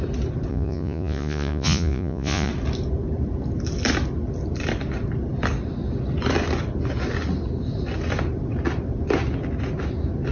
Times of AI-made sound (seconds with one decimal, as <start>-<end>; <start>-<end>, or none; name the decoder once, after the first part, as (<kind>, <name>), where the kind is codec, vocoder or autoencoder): 0.5-2.5 (vocoder, Vocos)